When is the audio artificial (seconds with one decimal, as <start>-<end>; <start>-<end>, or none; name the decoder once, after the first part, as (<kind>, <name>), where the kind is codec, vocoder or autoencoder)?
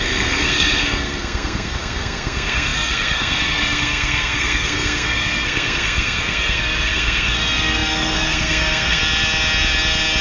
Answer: 0.0-9.0 (codec, SNAC)